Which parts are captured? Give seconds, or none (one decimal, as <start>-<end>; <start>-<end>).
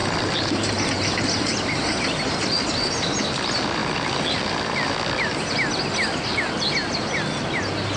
0.0-8.0